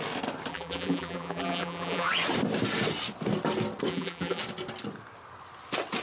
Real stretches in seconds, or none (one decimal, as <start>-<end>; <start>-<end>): 0.0-0.5; 2.1-3.9; 4.4-6.0